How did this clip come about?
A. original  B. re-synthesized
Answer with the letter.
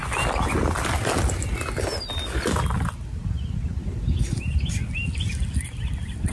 A